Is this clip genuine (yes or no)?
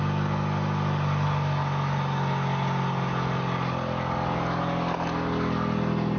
yes